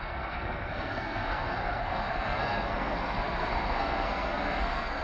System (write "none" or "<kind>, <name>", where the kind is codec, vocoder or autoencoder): codec, SNAC